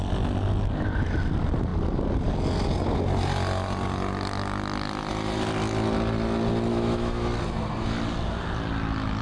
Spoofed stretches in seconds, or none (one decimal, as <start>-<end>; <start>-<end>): 6.7-7.3